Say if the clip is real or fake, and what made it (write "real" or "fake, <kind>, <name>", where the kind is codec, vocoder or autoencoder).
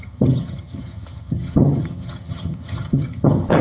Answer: fake, vocoder, HiFi-GAN